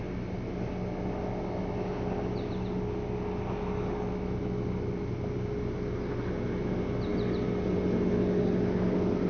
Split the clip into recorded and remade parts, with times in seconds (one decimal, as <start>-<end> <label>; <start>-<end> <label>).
0.0-9.3 recorded